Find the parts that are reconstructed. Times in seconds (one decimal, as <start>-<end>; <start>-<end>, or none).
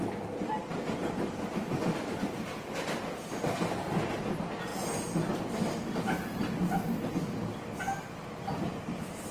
none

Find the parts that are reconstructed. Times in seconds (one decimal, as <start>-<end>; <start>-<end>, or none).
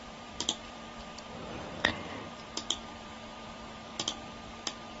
0.0-3.9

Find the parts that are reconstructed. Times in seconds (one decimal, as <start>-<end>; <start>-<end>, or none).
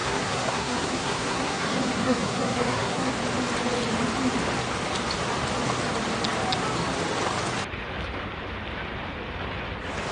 0.0-3.1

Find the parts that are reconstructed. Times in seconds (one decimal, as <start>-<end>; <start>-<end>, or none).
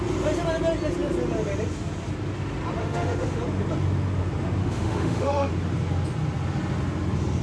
2.8-3.4; 4.6-5.5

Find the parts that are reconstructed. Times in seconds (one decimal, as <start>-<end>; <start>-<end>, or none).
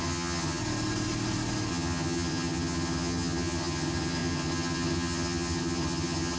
0.0-0.6; 1.7-6.4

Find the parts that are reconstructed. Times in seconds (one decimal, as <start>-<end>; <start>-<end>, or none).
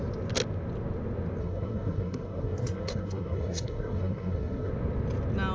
1.4-4.7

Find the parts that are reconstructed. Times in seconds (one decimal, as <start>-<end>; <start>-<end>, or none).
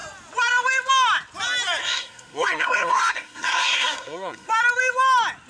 1.8-4.5